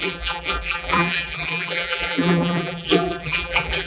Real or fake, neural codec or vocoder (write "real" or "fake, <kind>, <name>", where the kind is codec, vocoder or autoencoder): fake, vocoder, BigVGAN v2